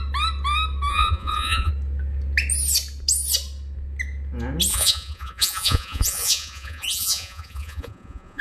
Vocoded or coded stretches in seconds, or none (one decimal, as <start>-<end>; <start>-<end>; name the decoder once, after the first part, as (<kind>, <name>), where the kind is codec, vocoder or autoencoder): 0.9-1.7 (vocoder, Vocos); 4.7-8.4